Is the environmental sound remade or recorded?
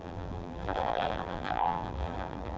remade